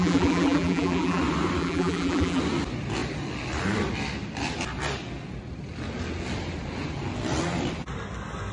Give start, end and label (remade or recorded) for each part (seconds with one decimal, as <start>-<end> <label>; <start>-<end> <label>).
0.0-1.2 remade; 1.2-1.6 recorded; 1.6-2.4 remade; 2.4-8.5 recorded

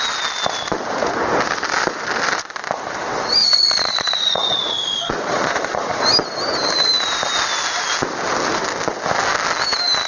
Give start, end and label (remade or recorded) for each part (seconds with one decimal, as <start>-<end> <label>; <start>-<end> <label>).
0.0-3.4 recorded; 3.4-6.0 remade; 6.0-10.1 recorded

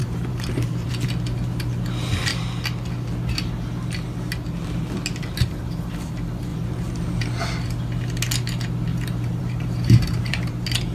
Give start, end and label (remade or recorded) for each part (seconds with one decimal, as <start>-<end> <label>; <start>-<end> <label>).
0.0-0.9 remade; 0.9-6.5 recorded; 6.5-7.4 remade; 7.4-8.9 recorded; 8.9-10.5 remade; 10.5-10.9 recorded

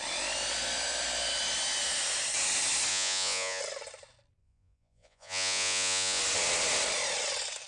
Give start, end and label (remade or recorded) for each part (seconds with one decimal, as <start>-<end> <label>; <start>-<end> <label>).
0.0-2.9 recorded; 2.9-3.6 remade; 3.6-4.4 recorded; 4.4-6.2 remade; 6.2-7.7 recorded